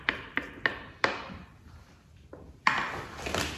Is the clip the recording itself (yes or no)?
yes